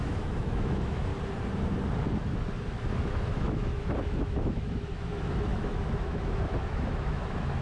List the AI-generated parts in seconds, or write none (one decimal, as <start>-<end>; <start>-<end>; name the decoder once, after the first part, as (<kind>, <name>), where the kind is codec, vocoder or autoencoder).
0.0-1.1 (autoencoder, DAC-VAE); 2.2-7.6

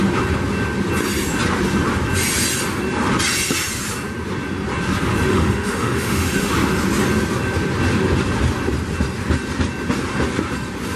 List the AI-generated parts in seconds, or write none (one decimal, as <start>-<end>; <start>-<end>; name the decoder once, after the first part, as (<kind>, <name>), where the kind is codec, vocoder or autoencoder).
5.3-6.5 (autoencoder, DAC-VAE)

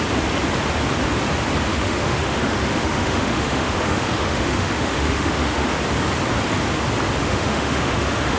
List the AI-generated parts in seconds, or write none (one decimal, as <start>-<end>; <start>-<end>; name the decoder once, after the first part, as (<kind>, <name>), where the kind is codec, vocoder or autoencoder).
1.7-5.8 (autoencoder, DAC-VAE); 7.2-8.4

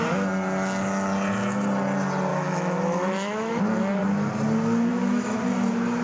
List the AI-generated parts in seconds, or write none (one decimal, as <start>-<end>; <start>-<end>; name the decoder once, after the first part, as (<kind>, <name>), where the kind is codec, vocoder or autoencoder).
2.3-3.6 (autoencoder, DAC-VAE); 4.9-5.4

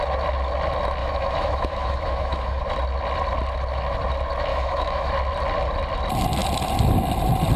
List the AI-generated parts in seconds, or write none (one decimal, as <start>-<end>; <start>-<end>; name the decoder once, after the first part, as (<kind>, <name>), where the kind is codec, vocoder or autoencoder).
1.0-2.6 (autoencoder, DAC-VAE); 4.5-5.1